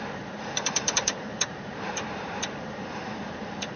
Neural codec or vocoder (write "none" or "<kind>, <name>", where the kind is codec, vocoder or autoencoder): vocoder, BigVGAN v2